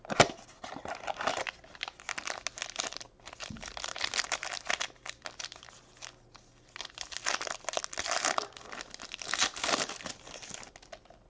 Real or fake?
real